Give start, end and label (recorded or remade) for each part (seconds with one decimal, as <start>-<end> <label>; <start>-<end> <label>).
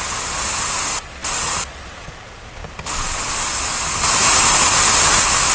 0.0-5.5 recorded